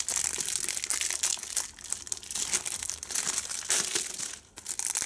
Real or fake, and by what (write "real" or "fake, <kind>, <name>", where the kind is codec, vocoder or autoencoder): real